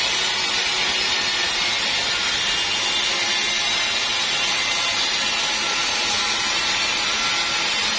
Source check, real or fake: real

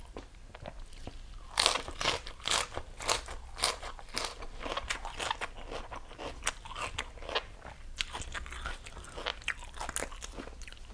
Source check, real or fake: real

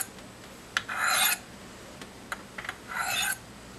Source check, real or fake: real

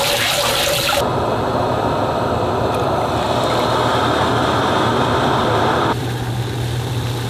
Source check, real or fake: fake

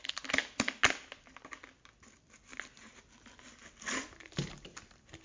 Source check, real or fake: real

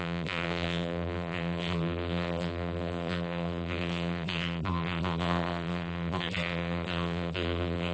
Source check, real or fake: fake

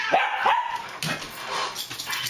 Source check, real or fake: real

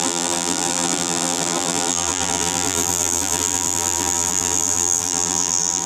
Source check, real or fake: fake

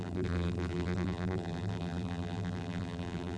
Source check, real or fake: fake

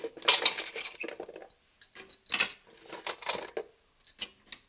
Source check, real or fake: real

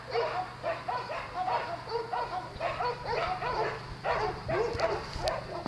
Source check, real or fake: real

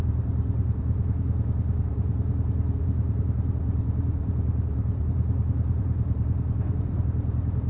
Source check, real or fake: fake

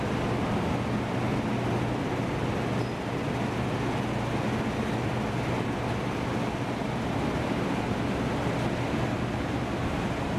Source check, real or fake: real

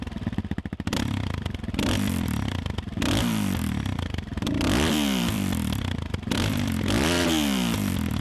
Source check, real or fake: fake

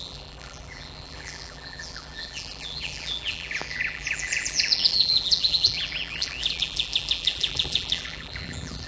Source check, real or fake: fake